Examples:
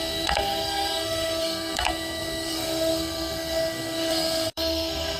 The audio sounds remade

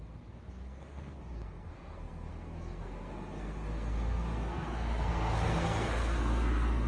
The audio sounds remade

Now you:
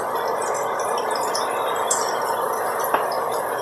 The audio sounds recorded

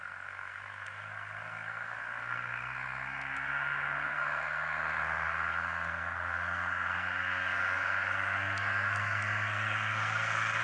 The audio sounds remade